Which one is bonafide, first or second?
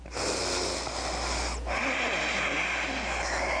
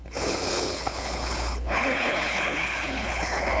first